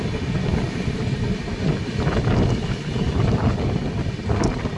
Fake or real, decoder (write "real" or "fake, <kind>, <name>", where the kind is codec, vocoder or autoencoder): real